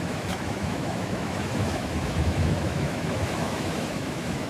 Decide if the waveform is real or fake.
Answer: fake